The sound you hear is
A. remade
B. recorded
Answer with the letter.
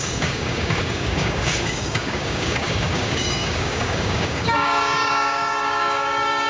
A